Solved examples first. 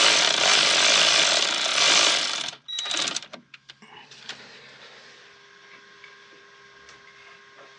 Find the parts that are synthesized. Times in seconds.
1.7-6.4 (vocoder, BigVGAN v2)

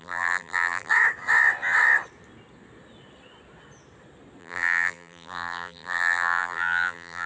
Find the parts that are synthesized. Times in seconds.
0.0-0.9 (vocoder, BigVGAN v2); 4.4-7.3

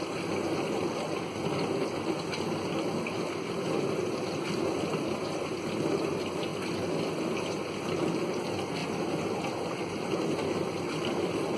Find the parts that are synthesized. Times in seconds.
6.5-7.7 (vocoder, BigVGAN v2)